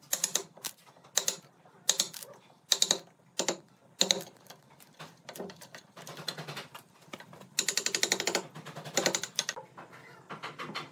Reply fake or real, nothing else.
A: real